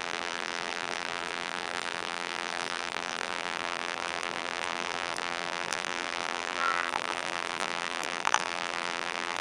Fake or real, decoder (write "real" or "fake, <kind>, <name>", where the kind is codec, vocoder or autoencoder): fake, vocoder, BigVGAN v2